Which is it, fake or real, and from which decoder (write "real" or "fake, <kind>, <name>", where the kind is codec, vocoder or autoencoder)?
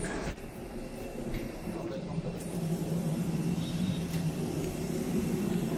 fake, vocoder, BigVGAN v2